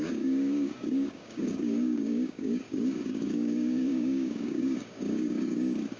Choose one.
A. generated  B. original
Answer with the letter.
A